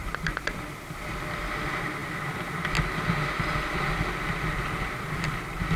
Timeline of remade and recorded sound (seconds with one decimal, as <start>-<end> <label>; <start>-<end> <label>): 0.0-1.2 remade; 1.2-5.8 recorded